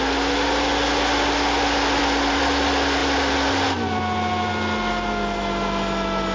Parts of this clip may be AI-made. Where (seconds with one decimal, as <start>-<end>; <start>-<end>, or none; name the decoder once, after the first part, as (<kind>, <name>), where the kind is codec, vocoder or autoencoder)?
none